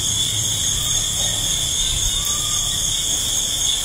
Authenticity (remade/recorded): recorded